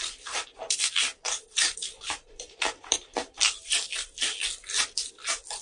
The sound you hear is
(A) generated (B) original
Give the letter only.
A